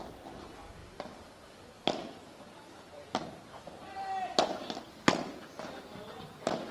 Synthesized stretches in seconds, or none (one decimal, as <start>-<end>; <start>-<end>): none